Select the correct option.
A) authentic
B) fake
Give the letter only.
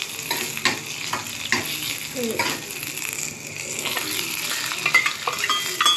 A